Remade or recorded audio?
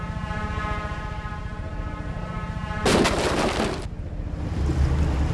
recorded